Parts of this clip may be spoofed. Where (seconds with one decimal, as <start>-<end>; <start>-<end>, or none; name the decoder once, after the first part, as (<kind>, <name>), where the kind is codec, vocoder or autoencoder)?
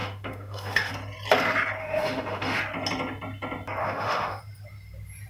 0.0-0.9 (autoencoder, DAC-VAE); 1.8-2.6; 3.8-4.4